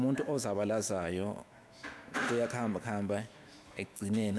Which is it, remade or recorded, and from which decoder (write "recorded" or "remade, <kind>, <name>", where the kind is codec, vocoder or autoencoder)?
remade, autoencoder, DAC-VAE